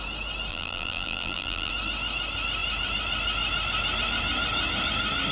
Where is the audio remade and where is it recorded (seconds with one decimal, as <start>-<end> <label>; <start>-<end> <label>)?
0.0-0.5 recorded; 0.5-1.7 remade; 1.7-5.3 recorded